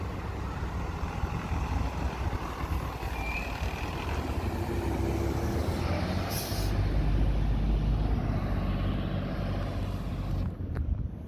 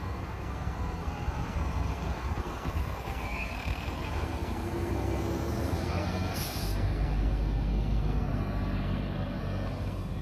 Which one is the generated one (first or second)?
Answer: second